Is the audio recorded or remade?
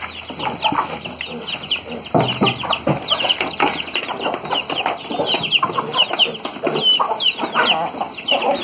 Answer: recorded